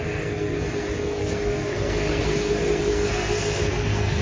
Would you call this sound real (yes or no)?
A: no